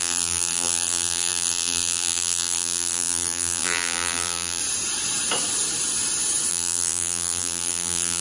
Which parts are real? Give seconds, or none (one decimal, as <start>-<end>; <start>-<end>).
4.6-6.5